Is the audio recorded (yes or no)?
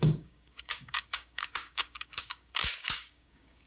no